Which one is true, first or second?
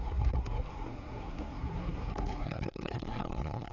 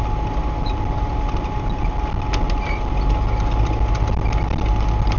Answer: second